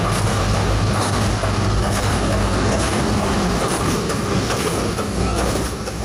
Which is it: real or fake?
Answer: fake